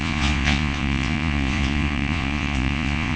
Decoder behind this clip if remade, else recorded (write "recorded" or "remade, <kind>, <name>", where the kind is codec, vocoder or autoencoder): remade, vocoder, Vocos